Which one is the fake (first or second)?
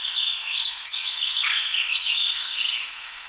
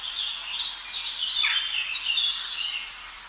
first